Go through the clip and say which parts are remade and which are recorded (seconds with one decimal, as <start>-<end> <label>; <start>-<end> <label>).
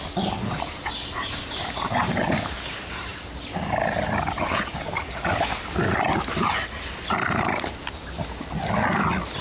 0.0-9.4 recorded